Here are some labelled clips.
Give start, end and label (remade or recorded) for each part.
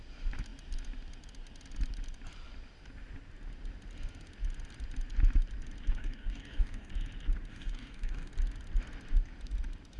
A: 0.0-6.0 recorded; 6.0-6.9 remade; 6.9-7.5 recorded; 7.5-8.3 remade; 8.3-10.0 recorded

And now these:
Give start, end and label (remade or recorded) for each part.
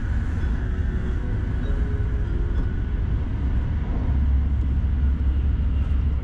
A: 0.0-0.5 recorded; 0.5-1.3 remade; 1.3-6.2 recorded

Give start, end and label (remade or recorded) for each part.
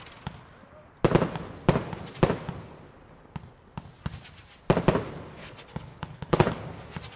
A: 0.0-5.4 recorded; 5.4-6.5 remade; 6.5-7.2 recorded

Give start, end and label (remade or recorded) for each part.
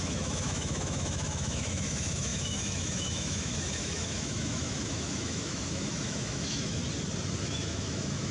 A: 0.0-6.8 remade; 6.8-7.4 recorded; 7.4-8.3 remade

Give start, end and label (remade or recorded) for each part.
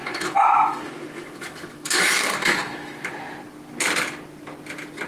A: 0.0-3.1 remade; 3.1-5.1 recorded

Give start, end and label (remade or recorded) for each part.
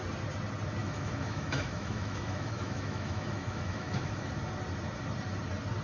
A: 0.0-0.8 recorded; 0.8-4.3 remade; 4.3-5.8 recorded